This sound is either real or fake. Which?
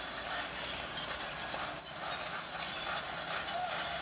real